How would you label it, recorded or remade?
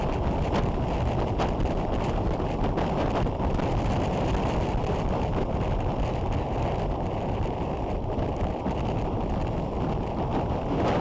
recorded